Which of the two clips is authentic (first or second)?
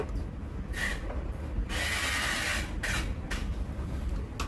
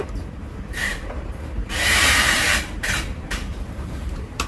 first